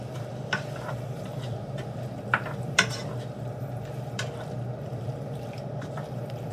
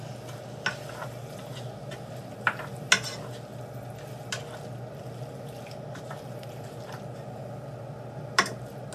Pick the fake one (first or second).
first